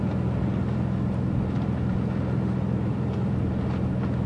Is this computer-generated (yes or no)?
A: no